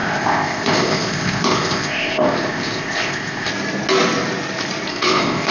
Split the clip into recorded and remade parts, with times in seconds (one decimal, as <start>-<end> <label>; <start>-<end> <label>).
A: 0.0-3.5 remade; 3.5-4.9 recorded; 4.9-5.5 remade